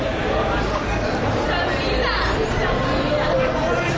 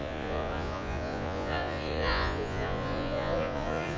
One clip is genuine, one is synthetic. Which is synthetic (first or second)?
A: second